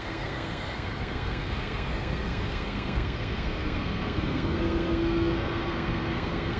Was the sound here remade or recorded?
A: remade